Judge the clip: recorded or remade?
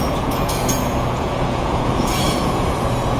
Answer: remade